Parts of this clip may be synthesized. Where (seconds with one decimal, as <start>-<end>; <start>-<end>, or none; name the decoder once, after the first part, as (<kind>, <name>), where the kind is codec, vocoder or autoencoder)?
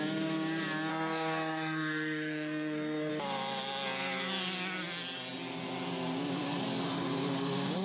0.9-3.1 (codec, SNAC)